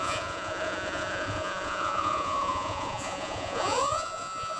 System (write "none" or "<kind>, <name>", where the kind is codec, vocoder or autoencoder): vocoder, Vocos